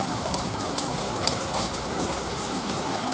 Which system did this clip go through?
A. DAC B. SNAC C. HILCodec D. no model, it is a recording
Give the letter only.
B